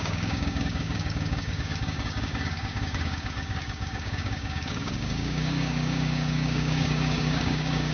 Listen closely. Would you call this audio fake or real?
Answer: fake